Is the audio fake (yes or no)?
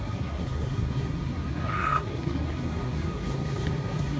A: yes